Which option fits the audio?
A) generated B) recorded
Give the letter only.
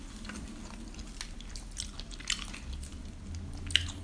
B